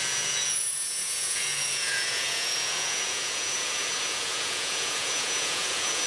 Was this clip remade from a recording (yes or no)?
yes